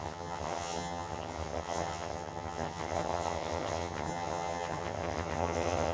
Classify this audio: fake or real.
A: fake